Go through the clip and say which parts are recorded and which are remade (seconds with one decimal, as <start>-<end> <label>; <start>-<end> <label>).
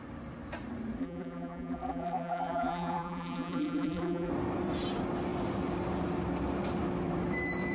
0.0-1.0 recorded; 1.0-4.3 remade; 4.3-7.7 recorded